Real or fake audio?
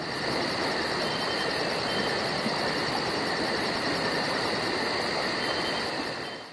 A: real